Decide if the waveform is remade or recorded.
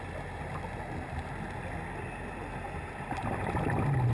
recorded